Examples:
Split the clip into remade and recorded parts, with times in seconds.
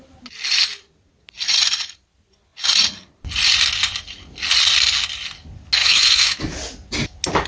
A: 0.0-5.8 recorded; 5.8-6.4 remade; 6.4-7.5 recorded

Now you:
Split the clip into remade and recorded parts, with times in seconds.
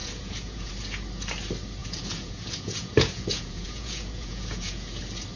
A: 0.0-0.7 remade; 0.7-1.8 recorded; 1.8-5.0 remade; 5.0-5.4 recorded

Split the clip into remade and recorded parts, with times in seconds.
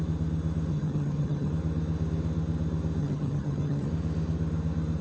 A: 0.0-0.7 recorded; 0.7-1.5 remade; 1.5-3.0 recorded; 3.0-3.9 remade; 3.9-5.0 recorded